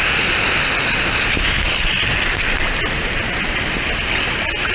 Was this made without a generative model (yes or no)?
yes